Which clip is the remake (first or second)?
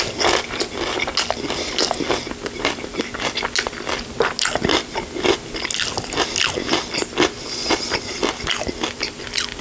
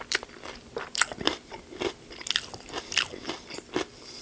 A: second